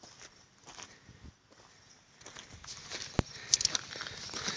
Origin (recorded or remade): recorded